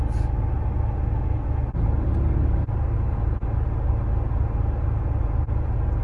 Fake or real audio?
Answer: real